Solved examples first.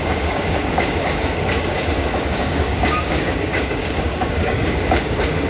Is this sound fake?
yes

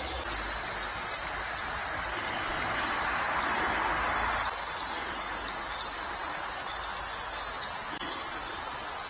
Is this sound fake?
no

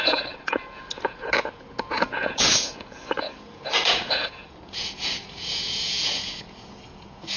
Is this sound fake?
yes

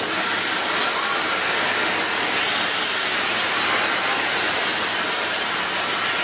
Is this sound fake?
no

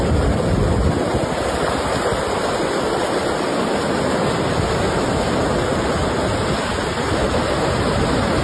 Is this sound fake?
no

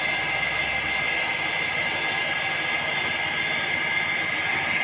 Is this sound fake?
no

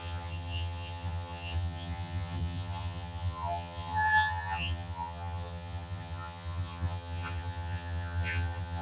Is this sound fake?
yes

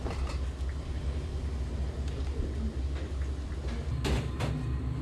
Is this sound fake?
no